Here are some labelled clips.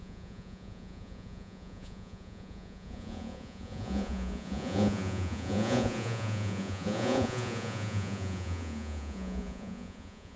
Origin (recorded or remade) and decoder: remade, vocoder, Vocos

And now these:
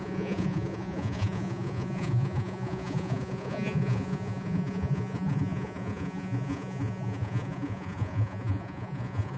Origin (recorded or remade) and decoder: remade, vocoder, Vocos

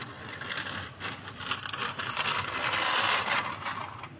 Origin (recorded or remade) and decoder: recorded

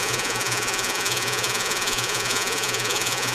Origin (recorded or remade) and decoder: remade, vocoder, Vocos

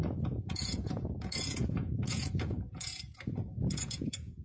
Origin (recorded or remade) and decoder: remade, vocoder, Vocos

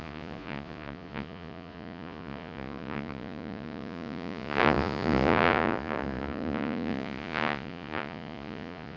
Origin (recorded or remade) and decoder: remade, vocoder, Vocos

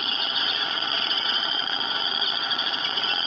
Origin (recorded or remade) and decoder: remade, vocoder, Vocos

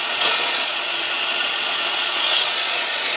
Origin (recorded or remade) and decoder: remade, vocoder, Vocos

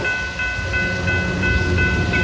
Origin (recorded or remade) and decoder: recorded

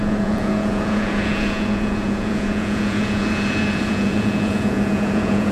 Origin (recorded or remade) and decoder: remade, vocoder, Vocos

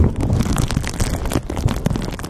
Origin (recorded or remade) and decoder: recorded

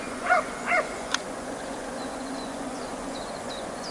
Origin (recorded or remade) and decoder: remade, vocoder, Vocos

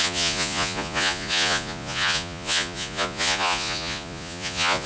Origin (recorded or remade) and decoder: remade, vocoder, Vocos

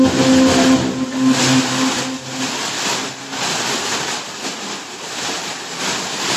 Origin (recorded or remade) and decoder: recorded